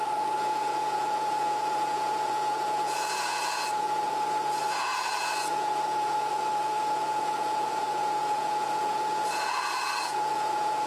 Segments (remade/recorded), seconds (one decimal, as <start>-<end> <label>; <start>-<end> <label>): 0.0-10.9 remade